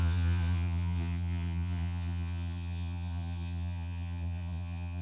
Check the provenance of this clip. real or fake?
fake